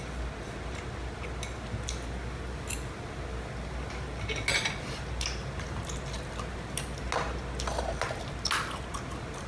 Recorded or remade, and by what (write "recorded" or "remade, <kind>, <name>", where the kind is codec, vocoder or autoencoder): recorded